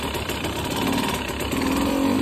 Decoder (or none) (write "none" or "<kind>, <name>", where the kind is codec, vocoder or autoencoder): none